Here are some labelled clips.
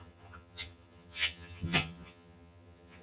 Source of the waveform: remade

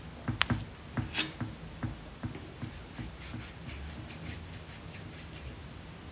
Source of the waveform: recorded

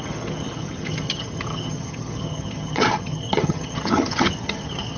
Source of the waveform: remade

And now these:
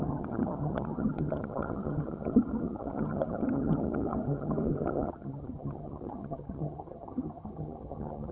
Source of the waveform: remade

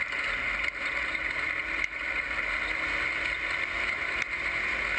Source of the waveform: recorded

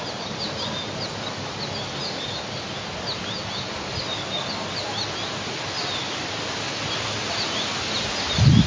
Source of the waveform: recorded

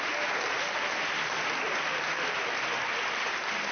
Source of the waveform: recorded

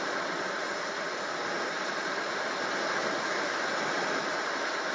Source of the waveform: recorded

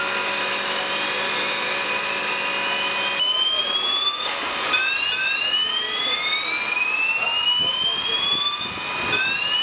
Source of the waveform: recorded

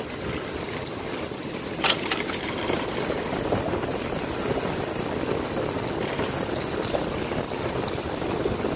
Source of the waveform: recorded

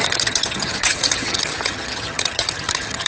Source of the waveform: remade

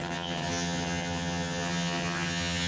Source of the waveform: remade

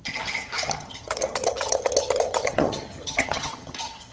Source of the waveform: remade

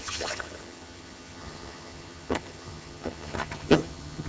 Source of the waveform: remade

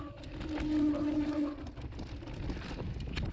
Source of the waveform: recorded